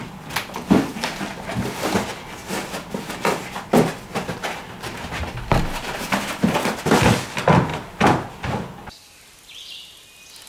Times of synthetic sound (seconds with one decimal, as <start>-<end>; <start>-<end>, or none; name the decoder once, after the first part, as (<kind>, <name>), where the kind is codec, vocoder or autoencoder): 7.7-8.3 (vocoder, BigVGAN v2)